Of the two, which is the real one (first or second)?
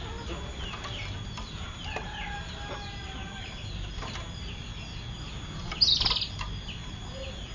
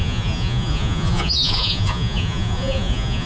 first